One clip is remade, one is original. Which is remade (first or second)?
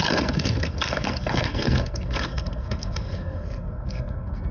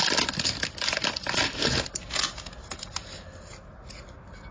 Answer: first